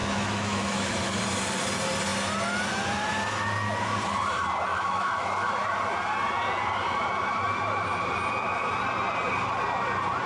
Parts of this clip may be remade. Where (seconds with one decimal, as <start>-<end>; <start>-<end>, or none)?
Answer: 0.0-1.2; 4.7-5.5